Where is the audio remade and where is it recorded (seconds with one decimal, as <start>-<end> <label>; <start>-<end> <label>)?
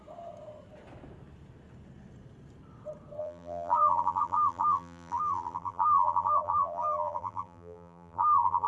0.0-3.2 recorded; 3.2-8.7 remade